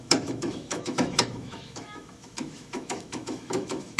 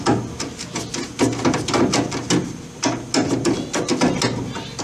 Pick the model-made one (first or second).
first